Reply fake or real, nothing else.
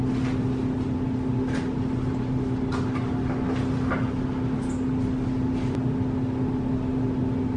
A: real